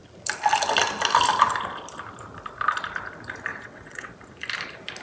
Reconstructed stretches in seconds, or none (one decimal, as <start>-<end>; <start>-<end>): 3.5-4.1